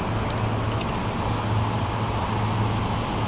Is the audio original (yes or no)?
yes